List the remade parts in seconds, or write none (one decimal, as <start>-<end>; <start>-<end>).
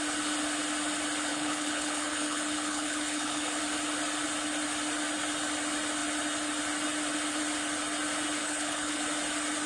1.3-3.6; 8.4-9.0